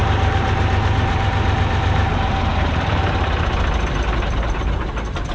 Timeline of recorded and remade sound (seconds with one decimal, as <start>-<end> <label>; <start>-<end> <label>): 0.0-2.1 remade; 2.1-2.5 recorded; 2.5-3.2 remade; 3.2-5.3 recorded